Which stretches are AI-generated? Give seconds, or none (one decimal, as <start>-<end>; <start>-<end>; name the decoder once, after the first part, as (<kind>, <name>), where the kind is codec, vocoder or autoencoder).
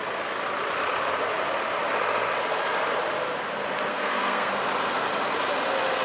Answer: 3.9-4.5 (codec, SNAC)